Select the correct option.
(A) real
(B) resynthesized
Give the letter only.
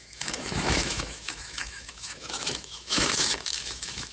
B